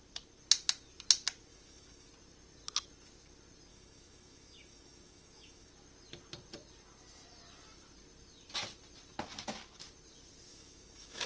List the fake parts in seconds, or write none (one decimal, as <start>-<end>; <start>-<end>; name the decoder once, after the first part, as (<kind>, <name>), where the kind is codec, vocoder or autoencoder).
1.5-2.1 (autoencoder, DAC-VAE); 3.7-5.7; 10.5-11.3